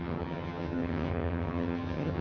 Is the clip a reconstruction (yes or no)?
yes